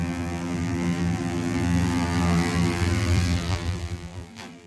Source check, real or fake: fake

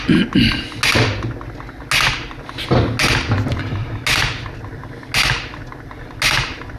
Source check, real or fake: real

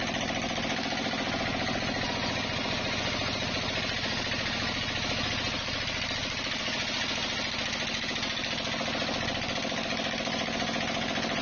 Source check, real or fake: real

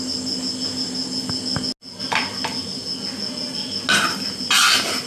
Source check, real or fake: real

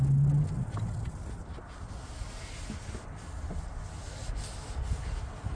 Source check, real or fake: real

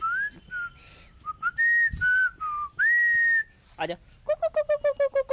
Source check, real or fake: real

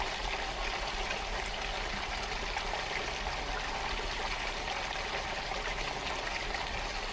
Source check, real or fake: real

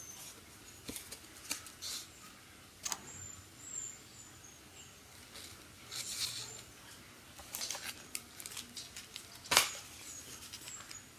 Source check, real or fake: real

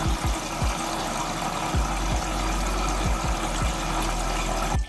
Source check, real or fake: real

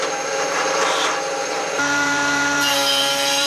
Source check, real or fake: fake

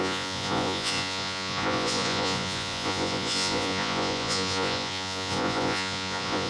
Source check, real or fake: fake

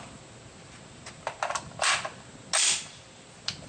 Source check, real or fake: real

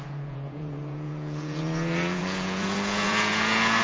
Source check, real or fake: fake